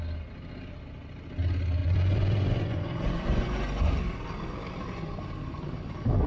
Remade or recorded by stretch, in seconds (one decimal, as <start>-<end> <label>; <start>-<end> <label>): 0.0-1.8 recorded; 1.8-3.9 remade; 3.9-6.3 recorded